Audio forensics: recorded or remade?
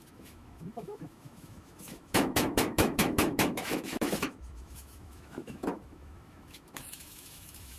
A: remade